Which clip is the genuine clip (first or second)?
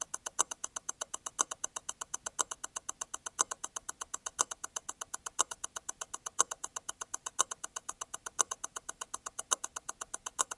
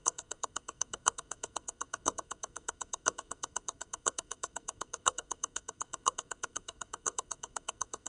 first